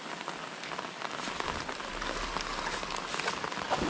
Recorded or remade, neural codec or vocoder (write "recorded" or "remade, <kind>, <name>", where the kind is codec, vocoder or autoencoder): recorded